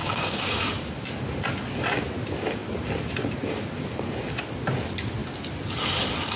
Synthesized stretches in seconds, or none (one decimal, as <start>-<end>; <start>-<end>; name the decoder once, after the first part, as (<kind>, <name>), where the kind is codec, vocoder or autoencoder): 0.0-0.6 (codec, DAC)